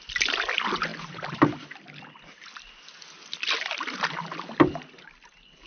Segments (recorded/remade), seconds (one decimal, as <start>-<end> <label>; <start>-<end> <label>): 0.0-5.7 recorded